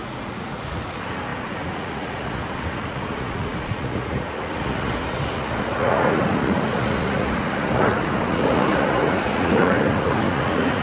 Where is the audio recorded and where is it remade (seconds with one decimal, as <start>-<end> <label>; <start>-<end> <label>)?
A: 0.0-10.8 remade